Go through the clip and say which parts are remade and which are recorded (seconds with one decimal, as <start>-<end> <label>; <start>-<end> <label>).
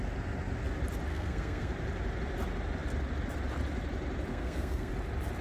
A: 0.0-1.1 recorded; 1.1-1.7 remade; 1.7-4.3 recorded; 4.3-4.9 remade; 4.9-5.4 recorded